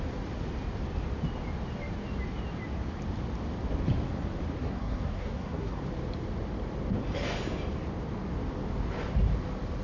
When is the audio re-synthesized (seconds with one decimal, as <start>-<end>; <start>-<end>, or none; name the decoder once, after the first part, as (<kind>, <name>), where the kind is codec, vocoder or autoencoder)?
4.6-5.8 (codec, SNAC)